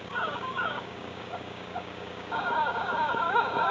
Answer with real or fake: fake